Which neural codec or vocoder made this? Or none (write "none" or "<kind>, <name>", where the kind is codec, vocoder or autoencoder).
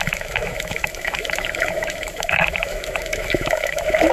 autoencoder, DAC-VAE